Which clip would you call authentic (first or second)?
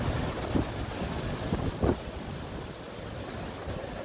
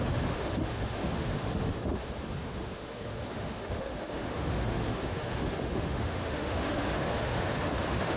first